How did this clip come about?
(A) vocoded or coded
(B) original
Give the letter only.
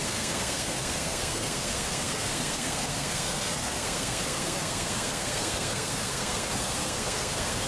A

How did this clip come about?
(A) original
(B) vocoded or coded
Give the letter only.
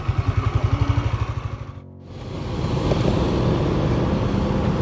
A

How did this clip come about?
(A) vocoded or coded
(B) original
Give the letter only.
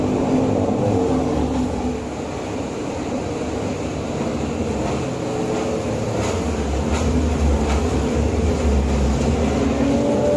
B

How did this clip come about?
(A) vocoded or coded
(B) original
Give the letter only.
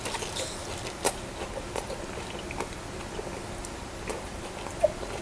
B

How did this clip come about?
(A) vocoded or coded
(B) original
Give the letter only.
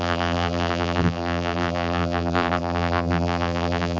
A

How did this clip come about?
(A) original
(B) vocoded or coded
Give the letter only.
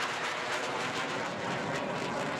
B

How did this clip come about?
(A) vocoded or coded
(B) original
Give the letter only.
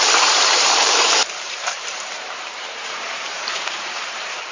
A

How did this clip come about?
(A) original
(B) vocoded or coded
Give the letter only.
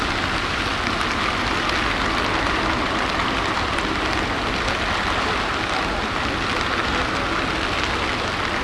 A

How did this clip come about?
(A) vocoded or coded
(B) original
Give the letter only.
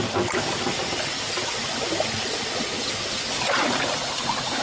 B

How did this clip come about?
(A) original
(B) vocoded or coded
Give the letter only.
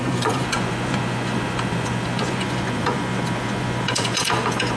B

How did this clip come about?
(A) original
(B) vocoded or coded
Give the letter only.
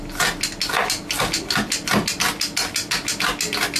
A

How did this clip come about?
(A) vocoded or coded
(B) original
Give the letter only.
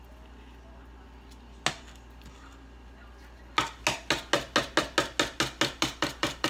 B